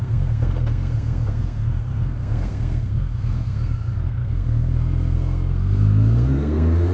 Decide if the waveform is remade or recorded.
remade